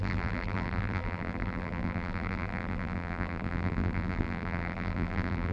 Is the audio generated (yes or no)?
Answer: yes